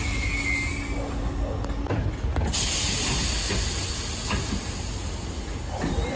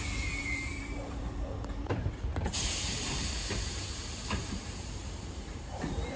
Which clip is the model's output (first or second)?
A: second